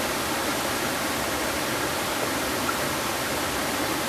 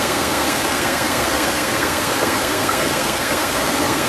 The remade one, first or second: second